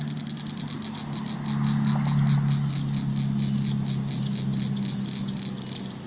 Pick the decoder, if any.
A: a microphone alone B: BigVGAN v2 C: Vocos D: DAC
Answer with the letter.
A